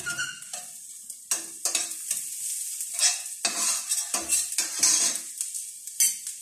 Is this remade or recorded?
recorded